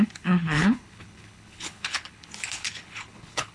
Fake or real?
fake